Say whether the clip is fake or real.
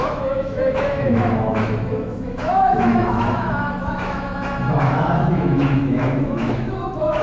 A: fake